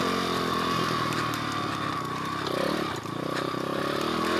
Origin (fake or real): real